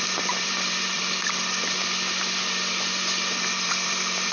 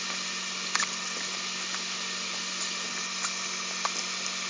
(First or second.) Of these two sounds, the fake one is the first